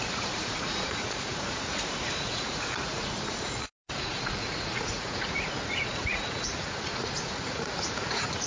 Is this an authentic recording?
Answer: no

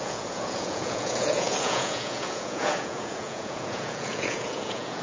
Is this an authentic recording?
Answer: no